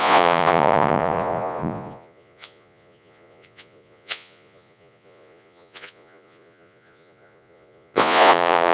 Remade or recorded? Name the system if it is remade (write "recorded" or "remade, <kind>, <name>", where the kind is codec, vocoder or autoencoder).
remade, vocoder, Vocos